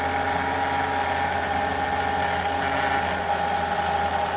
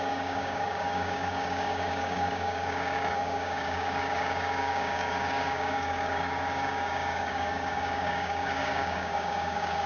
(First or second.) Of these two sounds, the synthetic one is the second